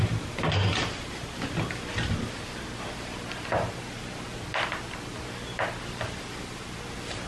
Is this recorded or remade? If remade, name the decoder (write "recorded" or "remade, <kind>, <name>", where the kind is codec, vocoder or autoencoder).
recorded